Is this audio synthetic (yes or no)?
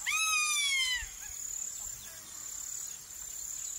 no